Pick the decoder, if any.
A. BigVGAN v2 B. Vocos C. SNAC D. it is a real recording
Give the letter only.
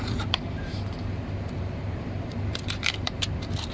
A